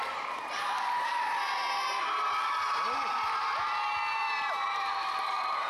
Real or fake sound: real